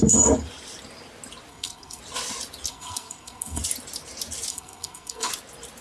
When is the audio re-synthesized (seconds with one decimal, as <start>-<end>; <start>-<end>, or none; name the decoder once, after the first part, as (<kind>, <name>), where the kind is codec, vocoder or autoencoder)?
1.5-2.0 (codec, SNAC); 2.7-3.6; 4.5-5.3